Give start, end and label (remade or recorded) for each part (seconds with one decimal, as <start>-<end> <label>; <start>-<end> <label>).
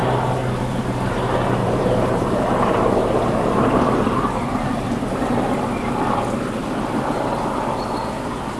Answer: 0.0-1.6 recorded; 1.6-6.2 remade; 6.2-8.6 recorded